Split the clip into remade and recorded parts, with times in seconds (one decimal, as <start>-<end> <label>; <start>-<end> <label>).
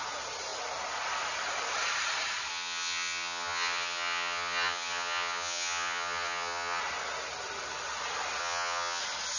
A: 0.0-2.5 recorded; 2.5-6.8 remade; 6.8-8.4 recorded; 8.4-9.0 remade; 9.0-9.4 recorded